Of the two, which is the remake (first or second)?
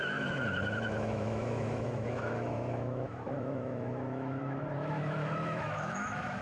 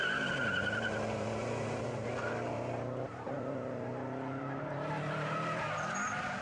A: first